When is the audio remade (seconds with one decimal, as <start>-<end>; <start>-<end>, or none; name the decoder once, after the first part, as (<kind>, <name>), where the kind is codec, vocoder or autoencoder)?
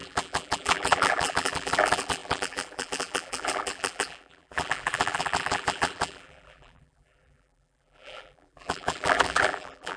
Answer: 0.0-10.0 (vocoder, BigVGAN v2)